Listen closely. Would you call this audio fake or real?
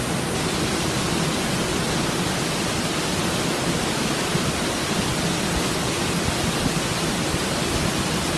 real